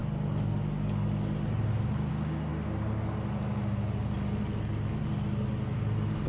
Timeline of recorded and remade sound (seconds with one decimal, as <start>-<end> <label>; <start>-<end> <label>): 0.0-2.1 recorded; 2.1-2.5 remade; 2.5-6.3 recorded